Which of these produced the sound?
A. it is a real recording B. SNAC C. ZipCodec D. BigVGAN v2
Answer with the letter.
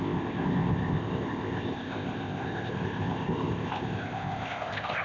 C